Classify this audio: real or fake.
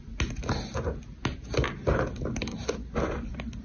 real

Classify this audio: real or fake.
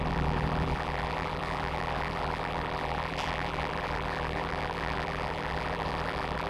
fake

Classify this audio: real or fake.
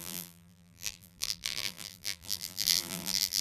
fake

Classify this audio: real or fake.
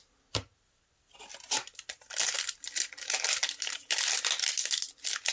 real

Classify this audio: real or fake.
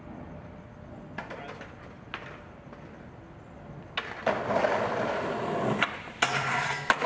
real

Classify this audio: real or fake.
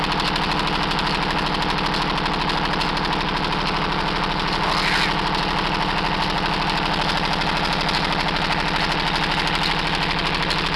real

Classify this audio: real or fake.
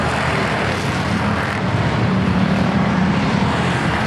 fake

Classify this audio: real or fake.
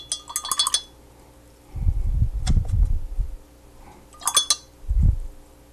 real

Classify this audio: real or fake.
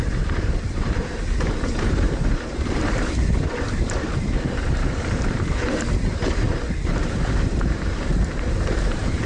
fake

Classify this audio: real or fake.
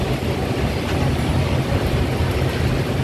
real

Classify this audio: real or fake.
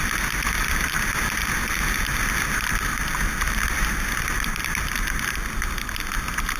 real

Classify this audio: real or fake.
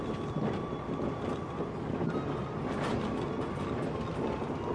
real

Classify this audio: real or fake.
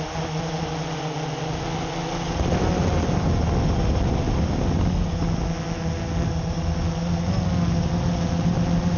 real